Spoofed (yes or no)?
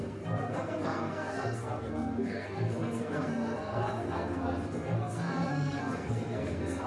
yes